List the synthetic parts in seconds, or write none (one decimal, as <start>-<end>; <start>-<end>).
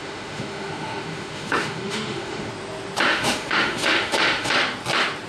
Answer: 0.0-2.5; 3.1-4.5